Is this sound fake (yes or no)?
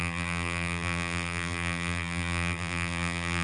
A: yes